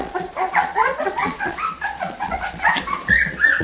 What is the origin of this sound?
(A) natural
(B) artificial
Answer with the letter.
B